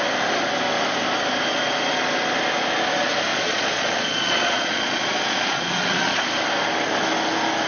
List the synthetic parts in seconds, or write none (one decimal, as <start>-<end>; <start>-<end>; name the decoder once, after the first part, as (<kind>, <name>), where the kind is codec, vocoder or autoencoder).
3.3-6.2 (vocoder, Vocos)